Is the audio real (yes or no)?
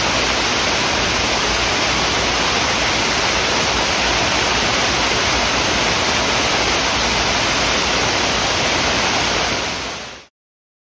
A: yes